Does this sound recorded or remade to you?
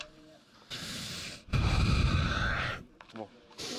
remade